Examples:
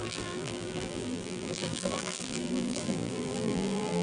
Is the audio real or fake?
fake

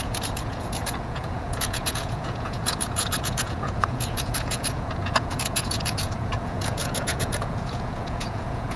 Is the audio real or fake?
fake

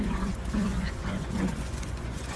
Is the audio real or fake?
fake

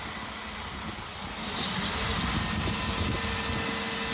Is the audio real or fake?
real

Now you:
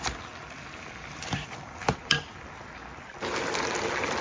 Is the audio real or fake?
real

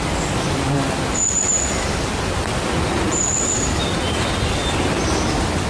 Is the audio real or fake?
real